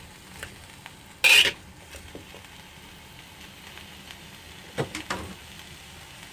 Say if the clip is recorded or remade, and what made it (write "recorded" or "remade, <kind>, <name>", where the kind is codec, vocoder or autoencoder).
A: recorded